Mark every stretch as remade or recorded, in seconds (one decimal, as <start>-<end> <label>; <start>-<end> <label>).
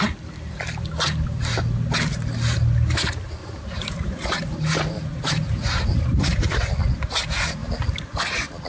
0.0-3.4 recorded; 3.4-6.4 remade; 6.4-8.7 recorded